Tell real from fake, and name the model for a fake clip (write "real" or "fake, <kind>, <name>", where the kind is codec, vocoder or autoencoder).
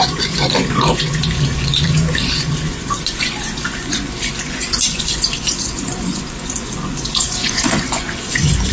fake, vocoder, Vocos